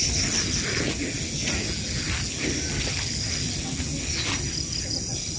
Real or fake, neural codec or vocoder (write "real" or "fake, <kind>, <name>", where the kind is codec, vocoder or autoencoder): real